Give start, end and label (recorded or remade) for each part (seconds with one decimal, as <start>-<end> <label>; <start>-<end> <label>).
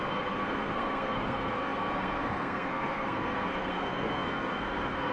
0.0-5.1 remade